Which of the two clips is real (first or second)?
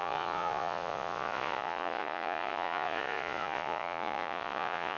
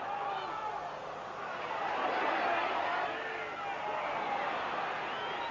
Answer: second